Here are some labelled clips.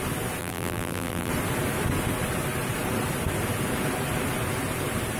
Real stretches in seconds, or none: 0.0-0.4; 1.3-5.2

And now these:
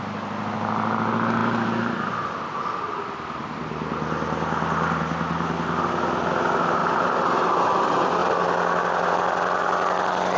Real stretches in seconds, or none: 0.0-10.4

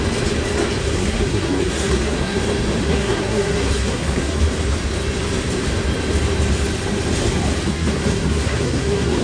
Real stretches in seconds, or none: 0.0-0.8; 2.4-2.8; 4.4-7.7

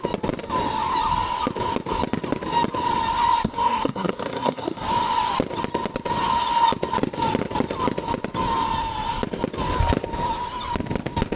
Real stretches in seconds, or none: 0.0-3.4; 4.9-11.4

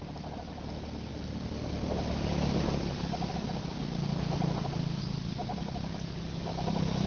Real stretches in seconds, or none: 0.0-7.1